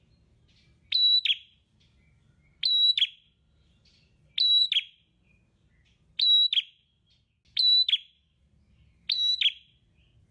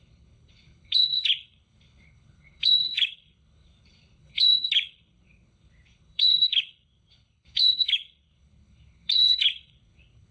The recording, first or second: first